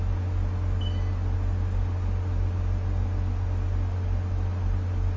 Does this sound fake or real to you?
real